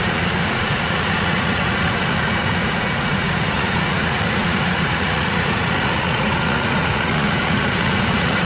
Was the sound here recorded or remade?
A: remade